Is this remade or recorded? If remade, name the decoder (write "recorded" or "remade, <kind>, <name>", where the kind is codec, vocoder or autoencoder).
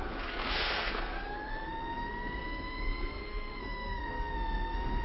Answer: remade, codec, SNAC